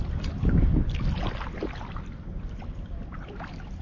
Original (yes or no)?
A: yes